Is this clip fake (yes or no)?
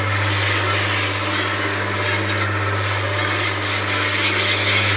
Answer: no